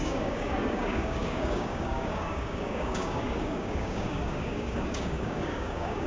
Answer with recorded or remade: remade